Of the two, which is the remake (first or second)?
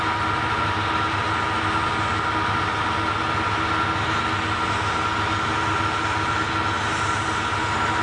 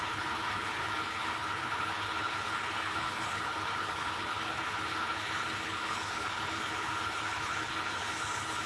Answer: second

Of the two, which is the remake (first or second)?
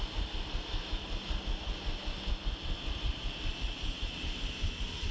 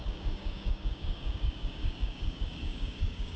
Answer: second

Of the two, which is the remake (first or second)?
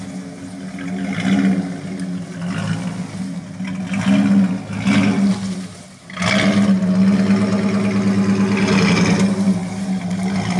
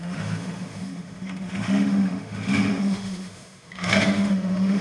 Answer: second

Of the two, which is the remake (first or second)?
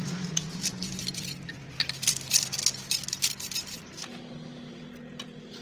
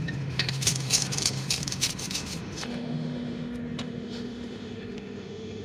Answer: second